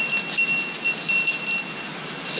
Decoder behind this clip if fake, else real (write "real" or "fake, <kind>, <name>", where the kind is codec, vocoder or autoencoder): real